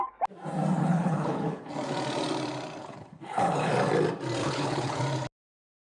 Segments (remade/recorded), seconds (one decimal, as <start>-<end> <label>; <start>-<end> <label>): 0.0-0.8 recorded; 0.8-1.7 remade; 1.7-2.8 recorded; 2.8-3.7 remade; 3.7-4.4 recorded; 4.4-5.0 remade; 5.0-5.8 recorded